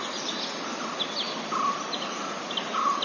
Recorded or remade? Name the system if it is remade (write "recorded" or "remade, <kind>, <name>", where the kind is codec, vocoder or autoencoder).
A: recorded